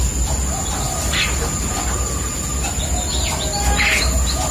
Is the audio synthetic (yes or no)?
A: no